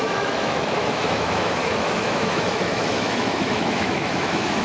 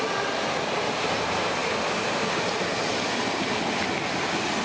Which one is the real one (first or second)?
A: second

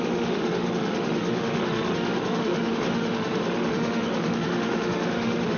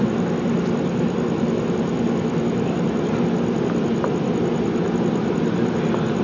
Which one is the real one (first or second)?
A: second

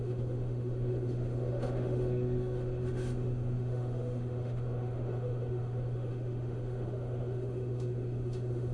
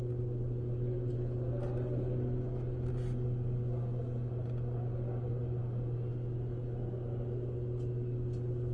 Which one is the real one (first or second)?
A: second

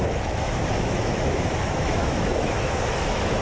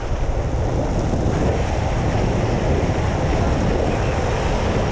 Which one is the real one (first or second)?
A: second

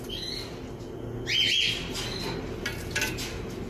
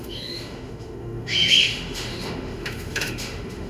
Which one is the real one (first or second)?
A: first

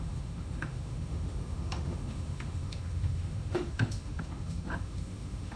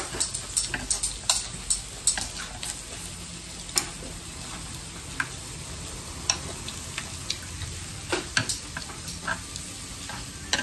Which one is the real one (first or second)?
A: second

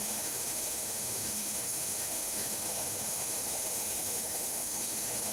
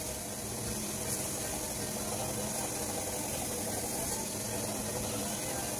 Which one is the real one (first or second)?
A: second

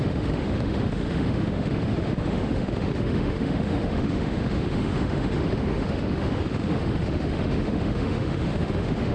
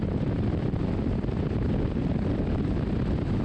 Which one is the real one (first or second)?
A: second